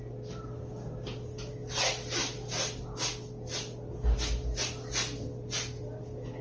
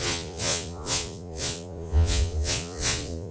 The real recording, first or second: first